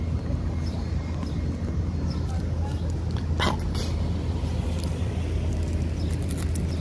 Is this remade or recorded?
recorded